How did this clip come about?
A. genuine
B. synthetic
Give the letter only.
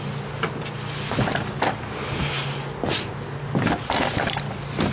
A